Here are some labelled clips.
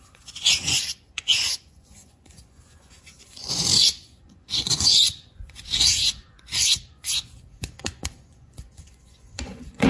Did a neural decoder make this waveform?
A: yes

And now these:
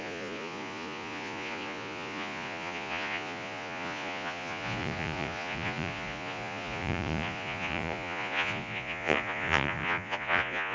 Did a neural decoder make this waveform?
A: yes